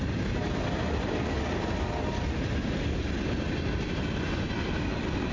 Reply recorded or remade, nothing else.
recorded